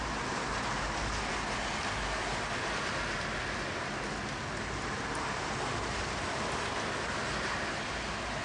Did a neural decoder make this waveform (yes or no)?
no